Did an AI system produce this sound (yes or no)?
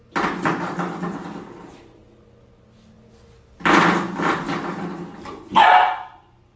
no